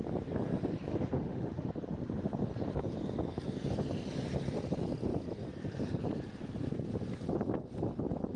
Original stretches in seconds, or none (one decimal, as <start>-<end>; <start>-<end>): 0.0-0.9; 1.7-8.4